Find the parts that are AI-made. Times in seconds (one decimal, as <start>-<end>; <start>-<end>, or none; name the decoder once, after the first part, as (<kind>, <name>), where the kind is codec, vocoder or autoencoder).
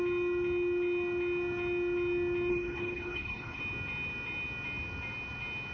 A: 2.5-3.6 (codec, HILCodec)